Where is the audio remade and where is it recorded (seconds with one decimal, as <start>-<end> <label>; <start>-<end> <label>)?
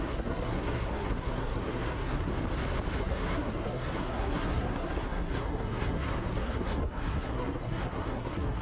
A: 0.0-2.3 remade; 2.3-3.0 recorded; 3.0-8.6 remade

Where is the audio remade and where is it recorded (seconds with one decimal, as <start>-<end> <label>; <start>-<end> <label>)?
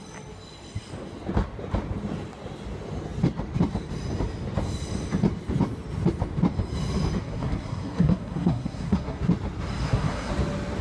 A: 0.0-7.2 recorded; 7.2-9.2 remade; 9.2-9.8 recorded; 9.8-10.3 remade; 10.3-10.8 recorded